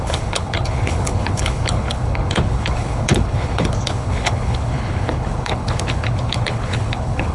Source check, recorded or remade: remade